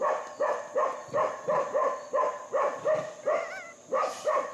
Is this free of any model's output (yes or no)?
yes